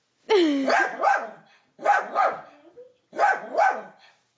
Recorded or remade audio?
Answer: recorded